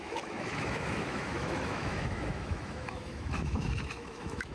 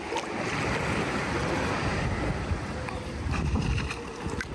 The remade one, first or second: first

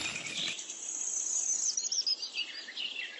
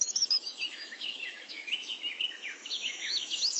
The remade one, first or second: second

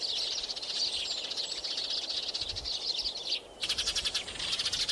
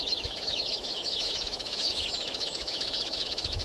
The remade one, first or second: second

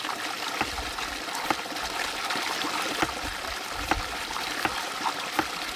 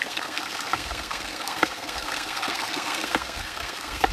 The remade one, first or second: second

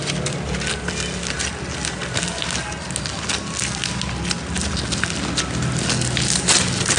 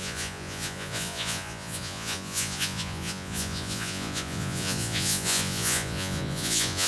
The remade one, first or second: second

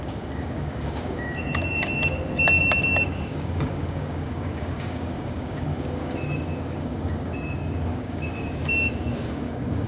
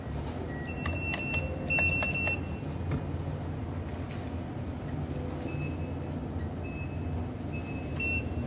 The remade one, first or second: first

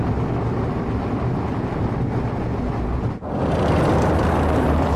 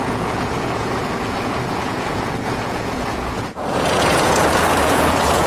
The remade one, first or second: second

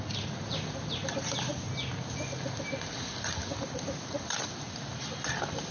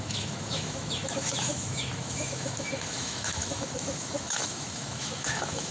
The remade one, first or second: second